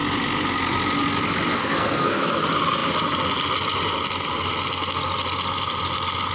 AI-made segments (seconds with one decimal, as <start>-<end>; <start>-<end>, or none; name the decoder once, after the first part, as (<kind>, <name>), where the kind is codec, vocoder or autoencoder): 1.6-2.3 (codec, SNAC)